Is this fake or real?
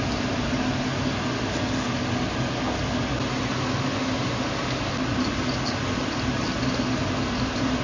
real